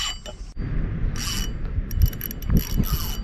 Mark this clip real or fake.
real